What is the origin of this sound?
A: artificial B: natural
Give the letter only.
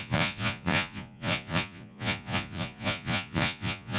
A